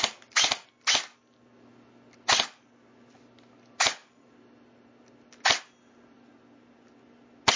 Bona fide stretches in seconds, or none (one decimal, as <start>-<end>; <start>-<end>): 0.0-7.6